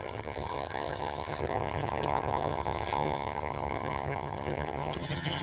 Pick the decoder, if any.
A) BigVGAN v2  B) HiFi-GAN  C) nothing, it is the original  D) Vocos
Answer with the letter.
B